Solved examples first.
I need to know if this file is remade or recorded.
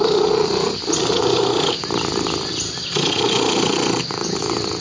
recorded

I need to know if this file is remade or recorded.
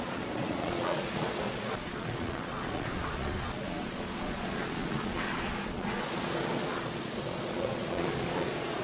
remade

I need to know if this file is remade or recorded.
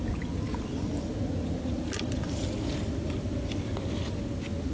recorded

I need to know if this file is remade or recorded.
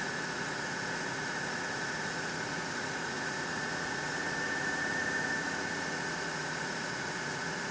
remade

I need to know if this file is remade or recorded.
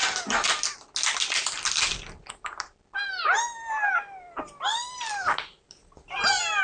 recorded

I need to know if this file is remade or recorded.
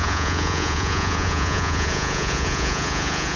remade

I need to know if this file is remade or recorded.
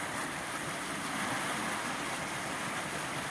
recorded